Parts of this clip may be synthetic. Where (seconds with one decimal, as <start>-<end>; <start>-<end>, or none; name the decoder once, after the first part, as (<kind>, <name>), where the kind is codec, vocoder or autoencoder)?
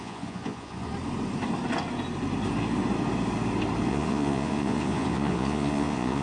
0.0-0.9 (vocoder, Vocos); 3.9-6.2